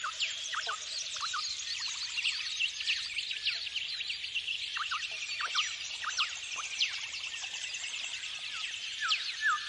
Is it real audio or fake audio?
real